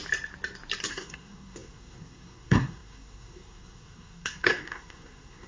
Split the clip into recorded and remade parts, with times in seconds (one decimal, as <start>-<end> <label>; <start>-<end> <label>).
0.0-0.9 recorded; 0.9-5.5 remade